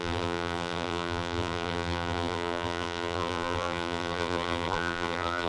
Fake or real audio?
fake